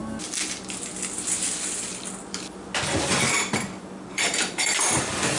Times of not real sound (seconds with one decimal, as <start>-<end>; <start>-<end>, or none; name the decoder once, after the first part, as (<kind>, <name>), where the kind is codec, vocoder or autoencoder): 4.1-5.4 (vocoder, BigVGAN v2)